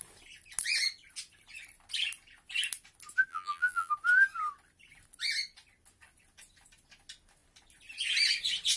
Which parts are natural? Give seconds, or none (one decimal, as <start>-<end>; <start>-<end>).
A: 0.0-3.3; 3.9-8.8